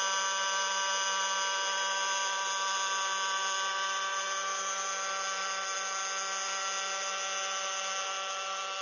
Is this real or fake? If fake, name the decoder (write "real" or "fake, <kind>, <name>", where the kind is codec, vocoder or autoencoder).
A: real